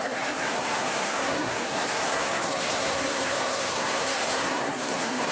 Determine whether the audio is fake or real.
fake